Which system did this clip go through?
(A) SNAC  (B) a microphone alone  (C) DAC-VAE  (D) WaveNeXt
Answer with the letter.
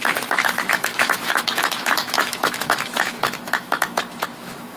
C